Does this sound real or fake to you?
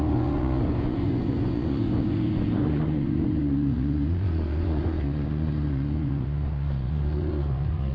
fake